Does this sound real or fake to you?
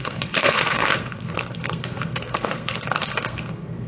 fake